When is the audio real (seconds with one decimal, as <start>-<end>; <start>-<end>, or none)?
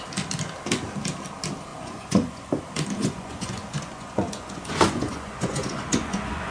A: 0.0-1.7; 2.5-3.0